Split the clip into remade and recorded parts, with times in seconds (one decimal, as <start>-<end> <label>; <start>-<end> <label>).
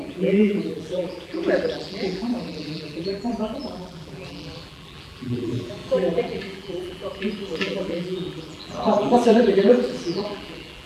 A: 0.0-10.9 remade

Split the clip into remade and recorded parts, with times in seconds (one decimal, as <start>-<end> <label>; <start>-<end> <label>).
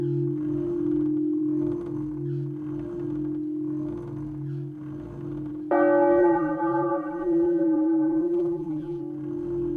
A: 0.0-6.2 recorded; 6.2-9.0 remade; 9.0-9.8 recorded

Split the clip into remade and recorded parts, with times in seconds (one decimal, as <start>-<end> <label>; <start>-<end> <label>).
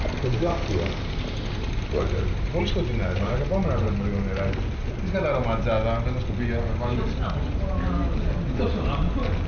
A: 0.0-9.5 recorded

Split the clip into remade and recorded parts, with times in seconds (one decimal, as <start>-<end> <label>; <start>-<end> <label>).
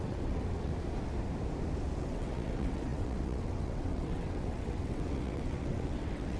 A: 0.0-0.7 remade; 0.7-2.0 recorded; 2.0-6.4 remade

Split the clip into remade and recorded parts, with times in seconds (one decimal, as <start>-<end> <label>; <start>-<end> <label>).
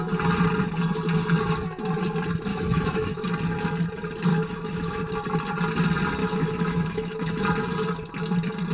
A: 0.0-2.5 recorded; 2.5-3.3 remade; 3.3-4.3 recorded; 4.3-5.0 remade; 5.0-6.2 recorded; 6.2-7.4 remade; 7.4-8.7 recorded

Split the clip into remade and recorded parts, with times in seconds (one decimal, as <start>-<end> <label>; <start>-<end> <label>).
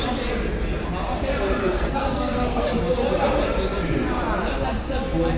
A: 0.0-1.6 recorded; 1.6-2.8 remade; 2.8-5.4 recorded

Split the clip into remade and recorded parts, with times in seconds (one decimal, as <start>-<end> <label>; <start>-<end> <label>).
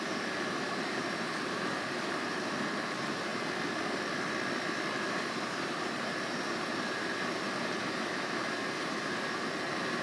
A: 0.0-3.3 remade; 3.3-5.0 recorded; 5.0-10.0 remade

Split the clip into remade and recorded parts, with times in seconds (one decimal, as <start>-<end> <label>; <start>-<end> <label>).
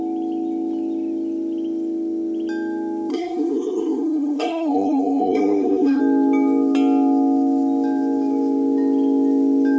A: 0.0-3.1 recorded; 3.1-6.0 remade; 6.0-9.8 recorded